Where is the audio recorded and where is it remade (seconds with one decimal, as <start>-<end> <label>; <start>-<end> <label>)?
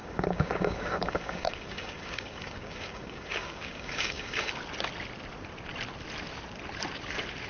0.0-4.5 remade; 4.5-7.5 recorded